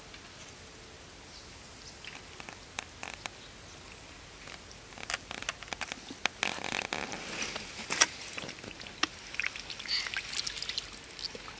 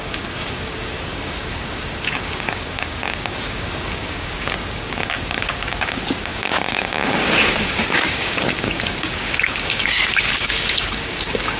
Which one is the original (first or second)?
first